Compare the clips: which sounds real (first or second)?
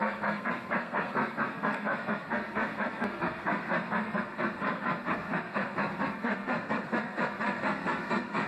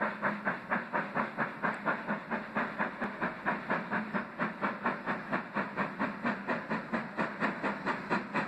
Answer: second